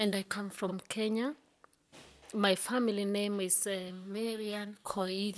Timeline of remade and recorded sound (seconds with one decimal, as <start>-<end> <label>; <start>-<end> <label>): 0.0-0.7 remade; 0.7-3.9 recorded; 3.9-5.4 remade